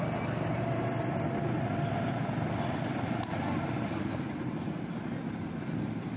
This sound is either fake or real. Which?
real